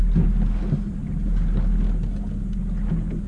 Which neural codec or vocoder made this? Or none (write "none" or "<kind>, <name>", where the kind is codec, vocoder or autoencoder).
none